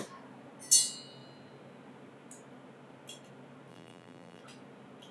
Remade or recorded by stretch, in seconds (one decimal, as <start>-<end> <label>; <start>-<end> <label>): 0.0-3.7 recorded; 3.7-4.4 remade; 4.4-5.1 recorded